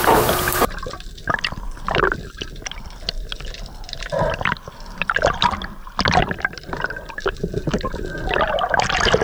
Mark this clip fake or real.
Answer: real